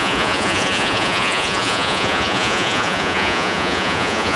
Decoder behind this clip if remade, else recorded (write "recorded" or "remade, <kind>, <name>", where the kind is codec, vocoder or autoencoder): remade, vocoder, Vocos